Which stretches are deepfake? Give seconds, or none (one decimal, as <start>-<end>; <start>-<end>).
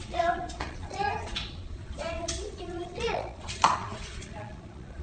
0.0-5.0